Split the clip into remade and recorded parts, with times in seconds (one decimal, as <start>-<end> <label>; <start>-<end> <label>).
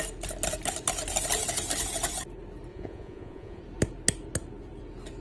0.0-2.7 recorded; 2.7-3.6 remade; 3.6-5.2 recorded